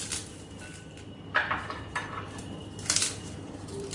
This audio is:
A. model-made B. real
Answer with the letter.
A